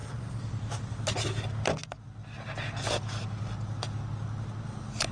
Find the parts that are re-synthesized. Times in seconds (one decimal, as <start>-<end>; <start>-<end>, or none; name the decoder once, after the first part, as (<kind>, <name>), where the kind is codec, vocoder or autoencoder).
none

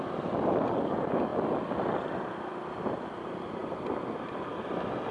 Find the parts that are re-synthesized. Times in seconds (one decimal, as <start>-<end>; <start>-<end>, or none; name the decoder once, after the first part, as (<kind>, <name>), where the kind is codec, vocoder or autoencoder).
3.6-4.6 (vocoder, BigVGAN v2)

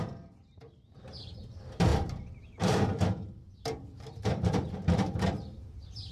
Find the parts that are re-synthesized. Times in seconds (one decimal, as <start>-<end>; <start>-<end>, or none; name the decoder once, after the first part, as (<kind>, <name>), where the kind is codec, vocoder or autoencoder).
0.0-6.1 (vocoder, BigVGAN v2)

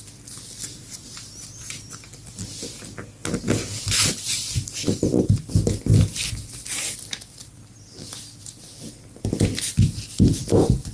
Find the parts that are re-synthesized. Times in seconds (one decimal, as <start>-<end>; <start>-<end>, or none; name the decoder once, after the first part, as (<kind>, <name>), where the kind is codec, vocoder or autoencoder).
none

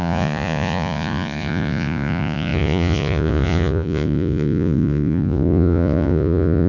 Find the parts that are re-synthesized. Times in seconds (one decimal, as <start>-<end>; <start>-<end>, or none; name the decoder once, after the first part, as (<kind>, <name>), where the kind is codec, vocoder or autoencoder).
0.0-6.7 (vocoder, Vocos)

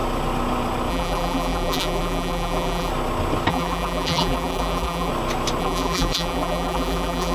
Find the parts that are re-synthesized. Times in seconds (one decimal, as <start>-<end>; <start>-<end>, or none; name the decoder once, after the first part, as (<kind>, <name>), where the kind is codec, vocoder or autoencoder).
0.9-2.9 (vocoder, BigVGAN v2); 3.5-5.1; 5.6-7.3